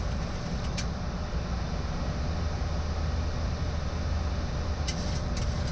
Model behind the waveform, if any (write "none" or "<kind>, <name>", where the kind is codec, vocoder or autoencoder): none